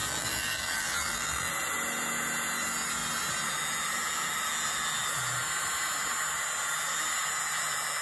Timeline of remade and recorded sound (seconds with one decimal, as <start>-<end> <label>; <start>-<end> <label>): 0.0-1.5 remade; 1.5-8.0 recorded

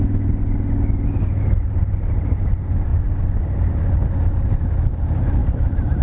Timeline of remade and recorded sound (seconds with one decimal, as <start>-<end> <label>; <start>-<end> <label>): 0.0-5.4 recorded; 5.4-6.0 remade

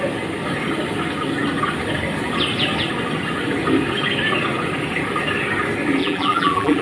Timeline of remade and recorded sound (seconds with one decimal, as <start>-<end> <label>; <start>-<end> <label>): 0.0-6.0 recorded; 6.0-6.8 remade

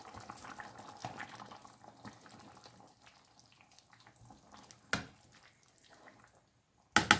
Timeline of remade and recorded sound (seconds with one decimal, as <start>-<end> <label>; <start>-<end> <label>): 0.0-1.0 recorded; 1.0-3.9 remade; 3.9-7.2 recorded

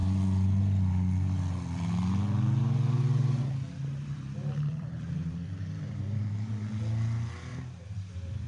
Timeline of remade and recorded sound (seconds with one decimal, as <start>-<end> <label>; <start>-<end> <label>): 0.0-4.7 recorded; 4.7-6.5 remade; 6.5-7.5 recorded; 7.5-8.5 remade

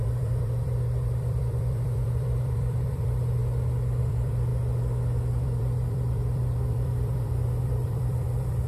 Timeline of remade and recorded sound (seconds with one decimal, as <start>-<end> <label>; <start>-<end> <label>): 0.0-3.4 remade; 3.4-4.0 recorded; 4.0-4.5 remade; 4.5-5.3 recorded; 5.3-8.7 remade

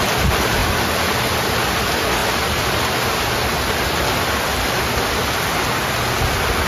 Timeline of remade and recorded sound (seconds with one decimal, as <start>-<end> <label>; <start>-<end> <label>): 0.0-6.7 recorded